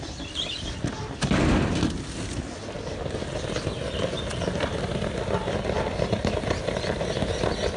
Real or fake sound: real